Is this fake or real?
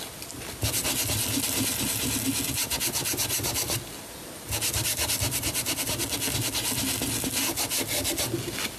real